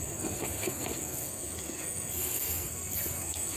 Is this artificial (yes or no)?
yes